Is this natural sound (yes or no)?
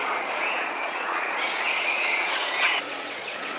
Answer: no